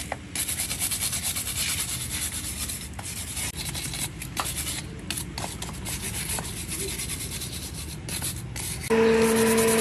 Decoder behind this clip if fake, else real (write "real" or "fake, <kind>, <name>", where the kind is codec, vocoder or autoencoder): real